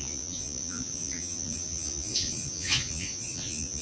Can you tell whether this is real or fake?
fake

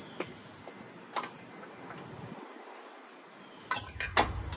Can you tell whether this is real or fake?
real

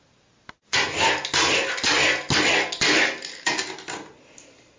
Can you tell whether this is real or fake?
real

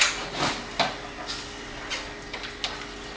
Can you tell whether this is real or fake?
real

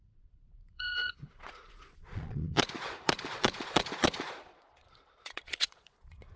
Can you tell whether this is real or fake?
fake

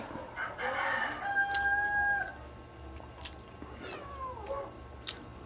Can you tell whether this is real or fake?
real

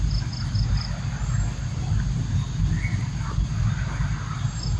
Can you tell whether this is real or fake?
real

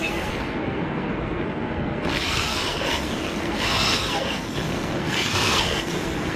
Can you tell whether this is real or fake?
fake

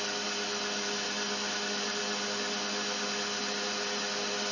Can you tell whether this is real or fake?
real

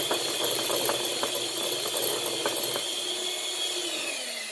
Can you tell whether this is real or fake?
real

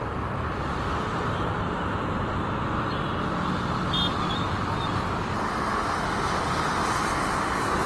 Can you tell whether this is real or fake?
real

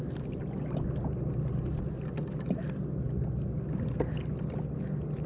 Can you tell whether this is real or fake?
real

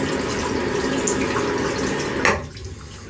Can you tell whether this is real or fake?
real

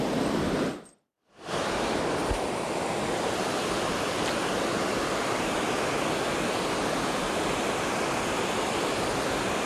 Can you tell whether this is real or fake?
fake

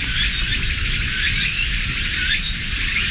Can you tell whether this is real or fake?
fake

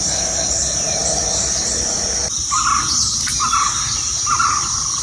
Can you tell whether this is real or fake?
real